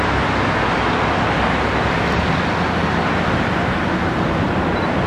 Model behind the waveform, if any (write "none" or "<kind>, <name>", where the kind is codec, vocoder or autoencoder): none